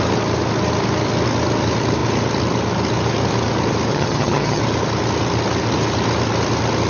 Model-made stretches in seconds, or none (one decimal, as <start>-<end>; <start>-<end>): 3.9-4.6

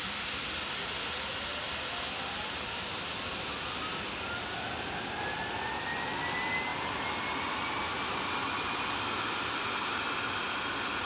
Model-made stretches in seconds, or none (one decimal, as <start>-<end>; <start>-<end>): none

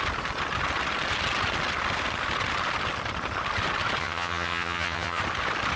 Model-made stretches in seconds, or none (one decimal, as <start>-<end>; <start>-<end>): 4.0-5.2

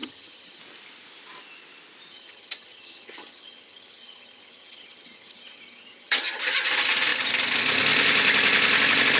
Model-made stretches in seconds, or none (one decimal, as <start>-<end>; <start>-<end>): 0.0-0.6; 2.1-6.4

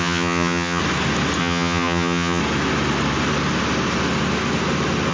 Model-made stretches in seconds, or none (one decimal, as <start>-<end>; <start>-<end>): 0.0-0.8; 1.4-2.4

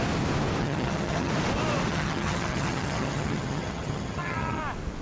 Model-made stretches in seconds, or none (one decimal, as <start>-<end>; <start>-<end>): 0.6-1.3; 1.9-4.6